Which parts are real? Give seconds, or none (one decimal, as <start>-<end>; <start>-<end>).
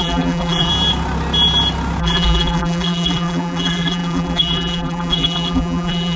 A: 0.7-2.0